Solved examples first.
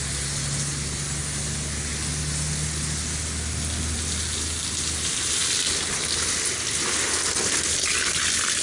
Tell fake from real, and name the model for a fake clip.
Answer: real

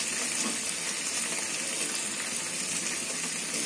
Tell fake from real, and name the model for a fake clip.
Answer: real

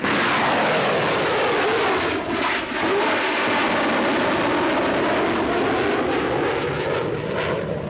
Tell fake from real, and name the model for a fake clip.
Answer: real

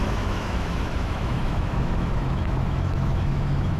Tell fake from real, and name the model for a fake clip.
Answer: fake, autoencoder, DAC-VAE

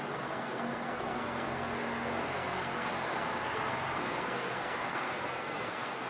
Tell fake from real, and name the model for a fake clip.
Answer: fake, codec, SNAC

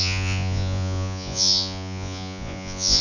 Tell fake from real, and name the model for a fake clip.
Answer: fake, vocoder, Vocos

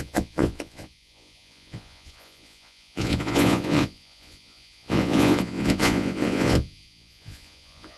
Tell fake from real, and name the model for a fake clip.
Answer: fake, vocoder, Vocos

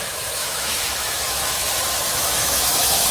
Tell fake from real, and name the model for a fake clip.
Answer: fake, autoencoder, DAC-VAE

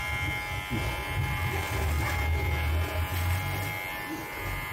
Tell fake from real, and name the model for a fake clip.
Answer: real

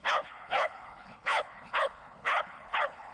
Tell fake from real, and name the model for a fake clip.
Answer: fake, codec, HILCodec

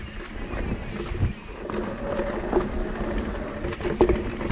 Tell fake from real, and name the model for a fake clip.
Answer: real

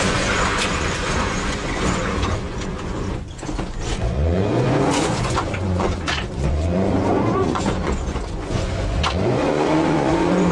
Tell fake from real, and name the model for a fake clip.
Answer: fake, vocoder, Vocos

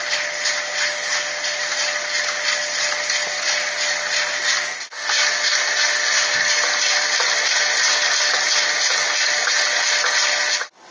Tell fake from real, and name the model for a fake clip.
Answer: real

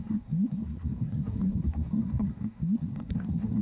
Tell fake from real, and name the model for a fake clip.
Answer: fake, codec, SNAC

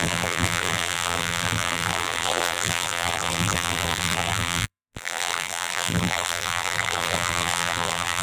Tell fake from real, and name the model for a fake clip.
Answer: fake, vocoder, BigVGAN v2